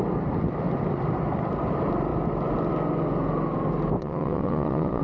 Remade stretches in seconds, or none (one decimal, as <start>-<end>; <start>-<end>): 4.0-5.0